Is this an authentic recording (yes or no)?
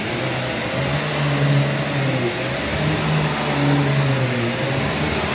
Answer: yes